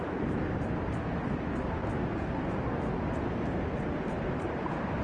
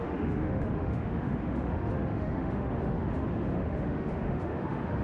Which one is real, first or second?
first